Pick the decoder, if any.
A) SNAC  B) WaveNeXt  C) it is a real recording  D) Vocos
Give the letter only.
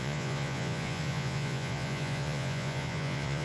D